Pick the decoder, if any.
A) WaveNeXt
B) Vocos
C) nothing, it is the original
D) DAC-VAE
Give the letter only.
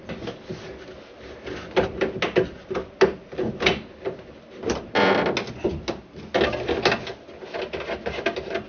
C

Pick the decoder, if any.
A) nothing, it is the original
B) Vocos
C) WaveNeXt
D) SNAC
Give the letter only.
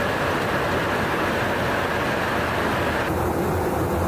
A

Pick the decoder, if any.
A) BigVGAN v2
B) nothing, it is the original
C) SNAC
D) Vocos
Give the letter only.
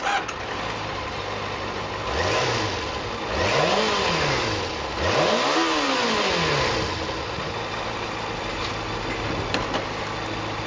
B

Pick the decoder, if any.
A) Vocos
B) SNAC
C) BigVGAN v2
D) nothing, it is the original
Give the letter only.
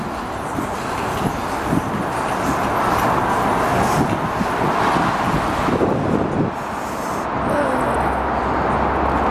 D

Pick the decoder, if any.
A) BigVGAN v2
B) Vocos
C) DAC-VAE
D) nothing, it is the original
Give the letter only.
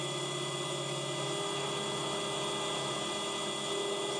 D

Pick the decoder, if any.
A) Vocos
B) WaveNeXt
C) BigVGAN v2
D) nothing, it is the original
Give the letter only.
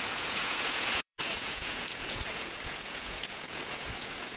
A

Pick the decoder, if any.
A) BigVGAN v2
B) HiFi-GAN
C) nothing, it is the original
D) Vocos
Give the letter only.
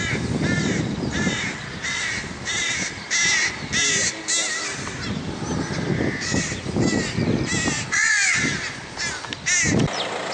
C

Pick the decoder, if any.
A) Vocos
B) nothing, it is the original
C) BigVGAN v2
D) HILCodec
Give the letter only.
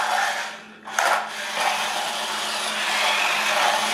B